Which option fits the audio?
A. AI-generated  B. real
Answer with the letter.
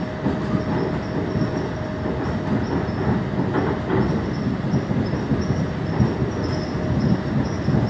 B